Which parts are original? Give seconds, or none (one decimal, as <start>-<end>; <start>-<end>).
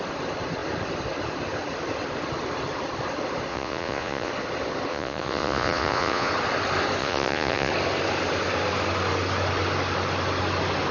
0.0-3.5; 4.3-4.9; 6.3-7.0; 7.7-10.9